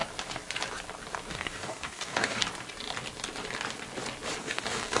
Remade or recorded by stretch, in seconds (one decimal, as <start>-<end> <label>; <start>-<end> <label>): 0.0-1.3 recorded; 1.3-2.4 remade; 2.4-4.4 recorded; 4.4-5.0 remade